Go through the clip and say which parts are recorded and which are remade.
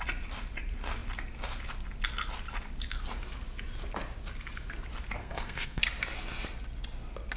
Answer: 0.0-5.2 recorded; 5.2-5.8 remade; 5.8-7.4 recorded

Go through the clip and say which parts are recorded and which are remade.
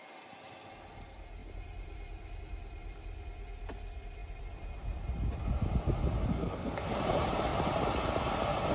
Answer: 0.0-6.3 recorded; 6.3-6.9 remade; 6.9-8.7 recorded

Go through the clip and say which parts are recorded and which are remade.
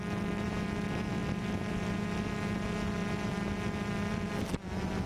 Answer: 0.0-5.1 recorded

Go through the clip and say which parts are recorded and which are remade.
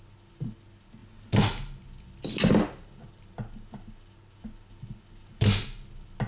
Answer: 0.0-6.3 recorded